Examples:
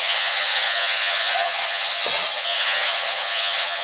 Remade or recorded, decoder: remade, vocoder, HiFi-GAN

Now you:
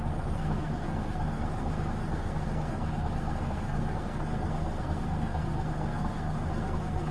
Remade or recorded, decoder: remade, codec, SNAC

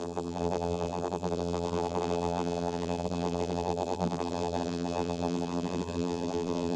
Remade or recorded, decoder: remade, vocoder, BigVGAN v2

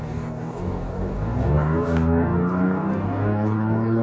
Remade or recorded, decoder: remade, codec, DAC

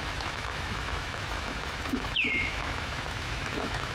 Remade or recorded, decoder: remade, autoencoder, DAC-VAE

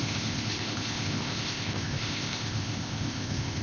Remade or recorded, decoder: remade, codec, ZipCodec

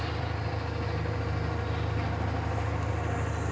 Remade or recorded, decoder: recorded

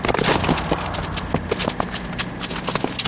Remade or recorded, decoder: recorded